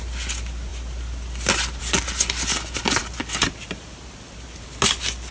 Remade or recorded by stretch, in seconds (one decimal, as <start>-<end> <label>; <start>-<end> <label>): 0.0-5.3 recorded